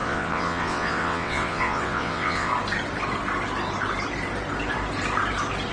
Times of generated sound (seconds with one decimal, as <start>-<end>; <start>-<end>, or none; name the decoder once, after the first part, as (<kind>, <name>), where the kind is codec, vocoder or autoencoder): 0.0-2.5 (vocoder, WaveNeXt)